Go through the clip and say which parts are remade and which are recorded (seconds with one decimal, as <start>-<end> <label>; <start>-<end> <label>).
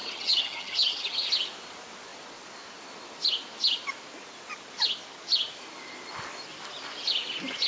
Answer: 0.0-1.3 remade; 1.3-7.7 recorded